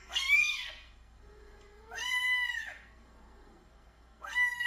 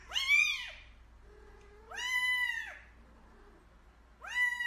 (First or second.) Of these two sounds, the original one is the second